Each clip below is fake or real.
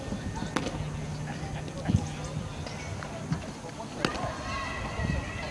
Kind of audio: real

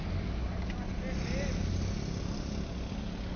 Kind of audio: real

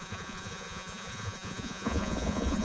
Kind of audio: fake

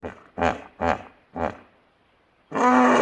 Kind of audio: real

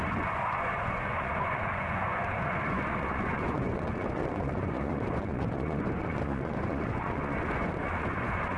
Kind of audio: fake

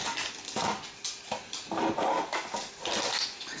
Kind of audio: real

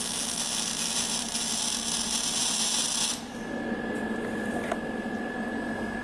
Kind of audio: real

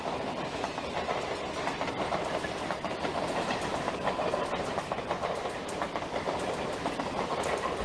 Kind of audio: real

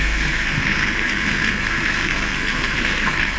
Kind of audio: fake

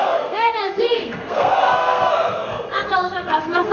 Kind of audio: fake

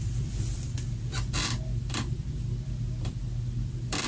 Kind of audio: fake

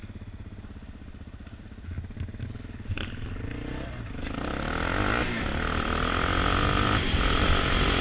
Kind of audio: real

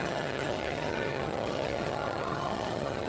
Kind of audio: fake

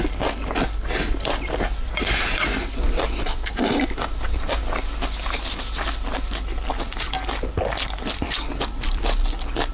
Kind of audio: real